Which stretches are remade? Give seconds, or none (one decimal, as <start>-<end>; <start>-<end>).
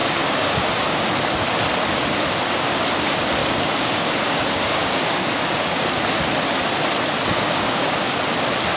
0.0-0.7; 3.4-5.9; 7.3-8.0